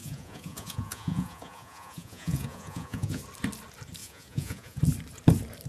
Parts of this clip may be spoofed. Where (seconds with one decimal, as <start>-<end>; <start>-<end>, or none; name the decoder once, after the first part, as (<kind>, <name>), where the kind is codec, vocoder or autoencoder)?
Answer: 0.0-3.2 (vocoder, Vocos); 4.0-4.8